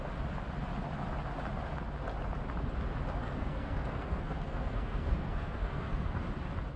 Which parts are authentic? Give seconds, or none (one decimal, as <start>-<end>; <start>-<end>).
0.0-3.2; 6.2-6.8